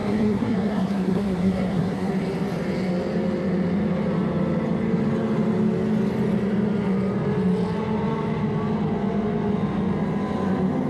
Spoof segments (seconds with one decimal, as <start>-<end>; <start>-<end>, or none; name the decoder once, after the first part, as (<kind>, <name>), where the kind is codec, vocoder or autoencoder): 0.0-2.1 (codec, SNAC)

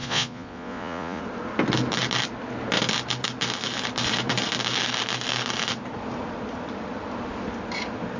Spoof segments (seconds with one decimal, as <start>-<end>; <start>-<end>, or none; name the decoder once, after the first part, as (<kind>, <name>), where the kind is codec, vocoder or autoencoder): 0.0-1.2 (vocoder, Vocos)

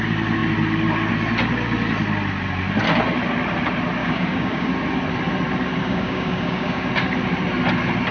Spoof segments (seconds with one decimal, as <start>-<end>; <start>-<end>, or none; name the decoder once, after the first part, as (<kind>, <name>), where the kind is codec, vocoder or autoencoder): 4.0-4.7 (codec, DAC); 5.8-6.9

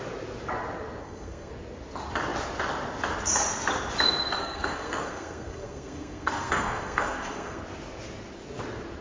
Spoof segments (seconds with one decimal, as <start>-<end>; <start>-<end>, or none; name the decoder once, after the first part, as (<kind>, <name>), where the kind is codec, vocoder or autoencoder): 1.0-1.5 (codec, SNAC); 4.4-7.6